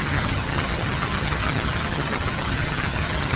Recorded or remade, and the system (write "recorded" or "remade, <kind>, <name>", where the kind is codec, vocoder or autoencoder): remade, vocoder, HiFi-GAN